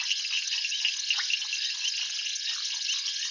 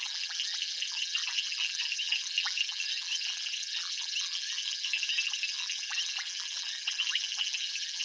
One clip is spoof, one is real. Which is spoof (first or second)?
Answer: second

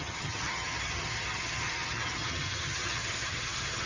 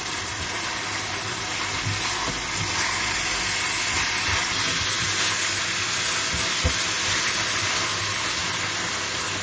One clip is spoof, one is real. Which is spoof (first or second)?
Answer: first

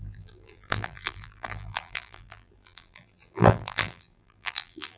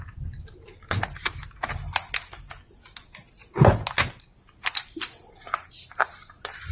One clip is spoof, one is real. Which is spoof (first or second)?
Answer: first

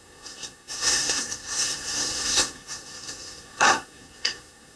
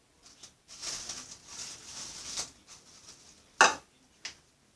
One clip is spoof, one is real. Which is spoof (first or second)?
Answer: first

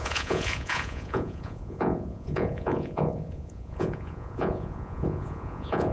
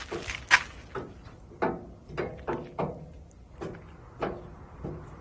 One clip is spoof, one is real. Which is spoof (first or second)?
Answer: first